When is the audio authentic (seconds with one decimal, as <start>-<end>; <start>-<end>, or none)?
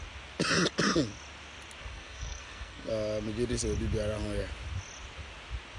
0.0-1.8; 2.9-5.8